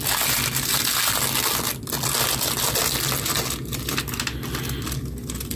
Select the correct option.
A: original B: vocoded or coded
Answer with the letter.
A